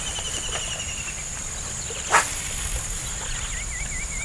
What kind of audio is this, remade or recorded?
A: recorded